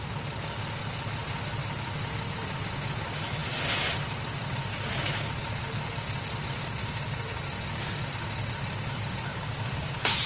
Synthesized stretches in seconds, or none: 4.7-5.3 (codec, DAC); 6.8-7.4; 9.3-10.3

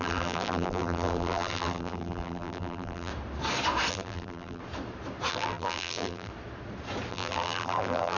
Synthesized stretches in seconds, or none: 0.0-3.1 (vocoder, BigVGAN v2); 3.9-4.6; 5.3-6.3; 7.1-8.2

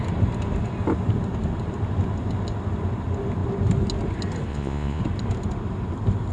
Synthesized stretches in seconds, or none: 4.5-5.0 (vocoder, Vocos)